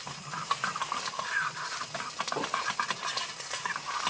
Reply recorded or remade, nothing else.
recorded